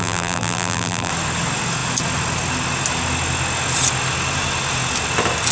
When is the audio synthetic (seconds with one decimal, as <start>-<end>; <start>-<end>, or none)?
0.0-1.1